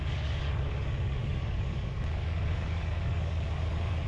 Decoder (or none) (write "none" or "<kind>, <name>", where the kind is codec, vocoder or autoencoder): codec, DAC